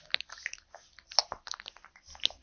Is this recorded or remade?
recorded